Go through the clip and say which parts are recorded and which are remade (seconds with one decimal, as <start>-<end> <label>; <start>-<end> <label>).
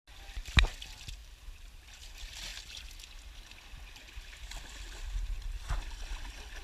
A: 0.0-1.2 recorded; 1.2-1.7 remade; 1.7-6.6 recorded